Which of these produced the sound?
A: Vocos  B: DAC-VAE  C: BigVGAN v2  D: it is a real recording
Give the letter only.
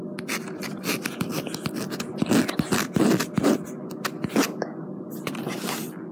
D